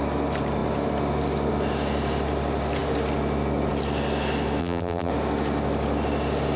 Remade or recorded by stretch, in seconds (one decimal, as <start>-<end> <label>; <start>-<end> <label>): 0.0-4.6 recorded; 4.6-5.1 remade; 5.1-6.6 recorded